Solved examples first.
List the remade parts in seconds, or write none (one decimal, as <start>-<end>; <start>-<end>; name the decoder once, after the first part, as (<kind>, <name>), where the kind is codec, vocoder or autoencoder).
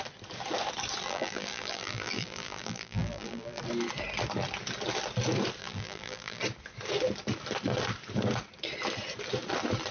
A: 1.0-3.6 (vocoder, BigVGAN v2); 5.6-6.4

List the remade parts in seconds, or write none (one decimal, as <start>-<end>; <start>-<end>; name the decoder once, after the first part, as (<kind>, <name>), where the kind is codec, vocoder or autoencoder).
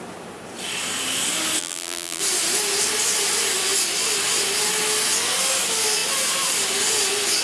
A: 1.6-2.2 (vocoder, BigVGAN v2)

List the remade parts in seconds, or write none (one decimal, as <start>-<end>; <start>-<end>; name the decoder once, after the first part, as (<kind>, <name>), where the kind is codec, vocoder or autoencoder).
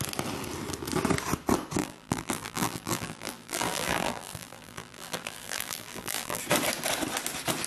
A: 1.8-6.4 (vocoder, BigVGAN v2)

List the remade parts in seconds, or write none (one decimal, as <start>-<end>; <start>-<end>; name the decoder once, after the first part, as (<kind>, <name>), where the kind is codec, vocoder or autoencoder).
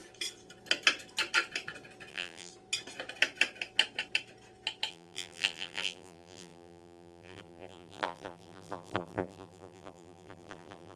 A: 2.1-2.5 (vocoder, BigVGAN v2); 4.9-11.0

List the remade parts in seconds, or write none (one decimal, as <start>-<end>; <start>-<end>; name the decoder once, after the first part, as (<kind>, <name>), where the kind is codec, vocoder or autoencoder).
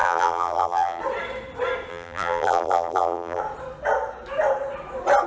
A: 0.0-1.0 (vocoder, BigVGAN v2); 1.9-3.4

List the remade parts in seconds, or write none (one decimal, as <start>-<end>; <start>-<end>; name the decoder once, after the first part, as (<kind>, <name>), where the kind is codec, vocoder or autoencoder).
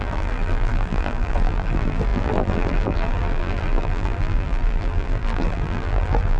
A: 0.0-6.4 (vocoder, BigVGAN v2)